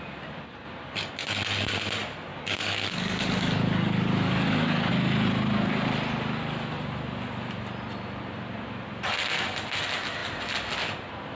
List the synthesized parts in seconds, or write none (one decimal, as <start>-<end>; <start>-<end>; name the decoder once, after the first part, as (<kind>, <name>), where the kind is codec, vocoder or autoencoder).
2.3-4.9 (codec, DAC)